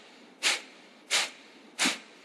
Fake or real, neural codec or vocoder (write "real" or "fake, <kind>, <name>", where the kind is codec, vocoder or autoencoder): fake, vocoder, BigVGAN v2